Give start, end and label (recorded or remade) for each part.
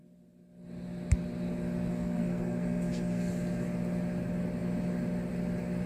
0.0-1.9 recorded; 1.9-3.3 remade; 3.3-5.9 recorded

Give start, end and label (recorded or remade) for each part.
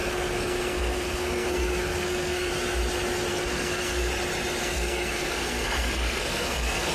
0.0-2.5 remade; 2.5-3.3 recorded; 3.3-4.1 remade; 4.1-4.6 recorded; 4.6-6.9 remade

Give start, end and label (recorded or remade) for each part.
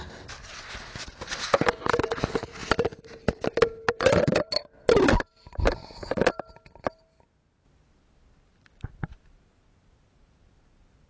0.0-11.1 recorded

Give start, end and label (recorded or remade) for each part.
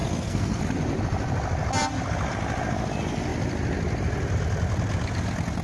0.0-0.6 remade; 0.6-5.6 recorded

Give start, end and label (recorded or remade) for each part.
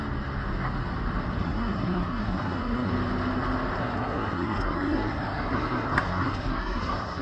0.0-1.4 recorded; 1.4-2.9 remade; 2.9-3.8 recorded; 3.8-7.2 remade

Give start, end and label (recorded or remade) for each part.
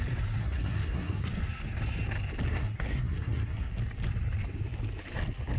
0.0-0.4 recorded; 0.4-1.3 remade; 1.3-2.5 recorded; 2.5-3.7 remade; 3.7-5.6 recorded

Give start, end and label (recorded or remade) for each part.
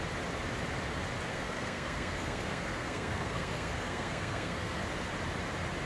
0.0-1.3 recorded; 1.3-4.8 remade; 4.8-5.9 recorded